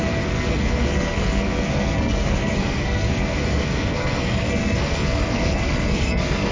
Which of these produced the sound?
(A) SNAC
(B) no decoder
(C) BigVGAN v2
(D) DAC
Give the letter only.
A